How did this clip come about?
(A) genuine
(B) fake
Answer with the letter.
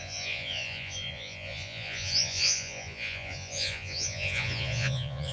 B